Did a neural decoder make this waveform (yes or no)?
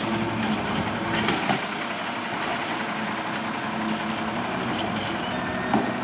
no